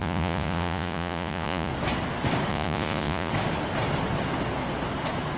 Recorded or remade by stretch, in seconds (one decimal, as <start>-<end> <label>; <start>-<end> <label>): 0.0-1.7 remade; 1.7-2.5 recorded; 2.5-3.3 remade; 3.3-5.4 recorded